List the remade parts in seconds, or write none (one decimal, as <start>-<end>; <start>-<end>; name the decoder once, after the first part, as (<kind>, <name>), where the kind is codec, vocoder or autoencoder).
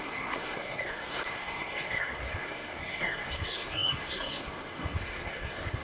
0.0-5.8 (codec, SNAC)